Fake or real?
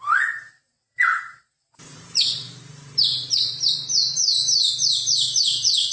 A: fake